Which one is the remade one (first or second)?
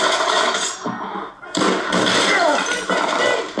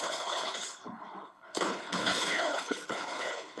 second